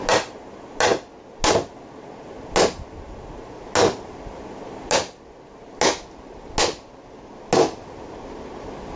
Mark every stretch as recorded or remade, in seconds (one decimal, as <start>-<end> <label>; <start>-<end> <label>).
0.0-9.0 recorded